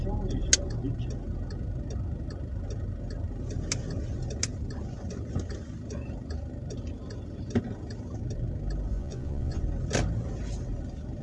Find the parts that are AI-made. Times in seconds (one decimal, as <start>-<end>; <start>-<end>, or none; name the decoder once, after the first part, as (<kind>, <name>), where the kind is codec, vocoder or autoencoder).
8.9-9.6 (vocoder, Vocos)